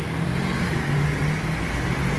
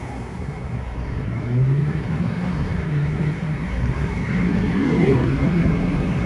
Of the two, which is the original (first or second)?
first